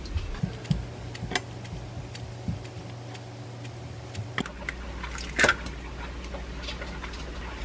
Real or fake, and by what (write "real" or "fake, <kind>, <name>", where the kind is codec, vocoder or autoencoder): real